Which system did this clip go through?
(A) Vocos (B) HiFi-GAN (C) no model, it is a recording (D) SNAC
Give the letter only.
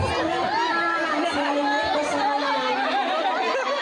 C